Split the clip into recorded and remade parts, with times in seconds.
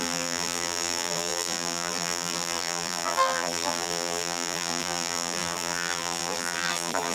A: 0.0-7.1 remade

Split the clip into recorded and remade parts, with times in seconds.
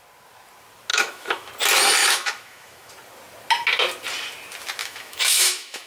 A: 0.0-0.9 recorded; 0.9-1.5 remade; 1.5-2.0 recorded; 2.0-2.9 remade; 2.9-4.8 recorded; 4.8-5.9 remade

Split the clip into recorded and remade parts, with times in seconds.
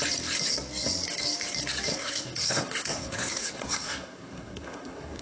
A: 0.0-1.9 recorded; 1.9-5.2 remade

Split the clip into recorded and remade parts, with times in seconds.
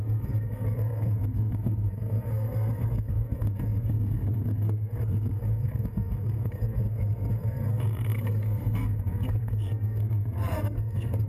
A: 0.0-11.3 remade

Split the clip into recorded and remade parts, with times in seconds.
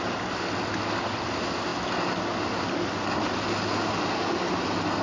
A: 0.0-5.0 recorded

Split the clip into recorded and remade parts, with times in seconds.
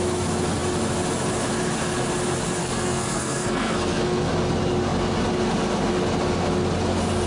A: 0.0-2.6 recorded; 2.6-4.3 remade; 4.3-7.3 recorded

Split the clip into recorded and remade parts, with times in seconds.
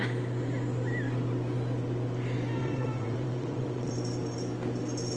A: 0.0-2.6 recorded; 2.6-3.9 remade; 3.9-5.2 recorded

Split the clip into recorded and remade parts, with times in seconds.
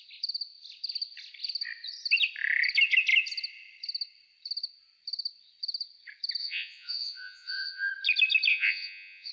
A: 0.0-6.4 recorded; 6.4-7.9 remade; 7.9-8.5 recorded; 8.5-9.3 remade